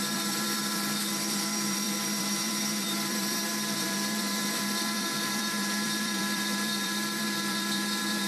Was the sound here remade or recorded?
remade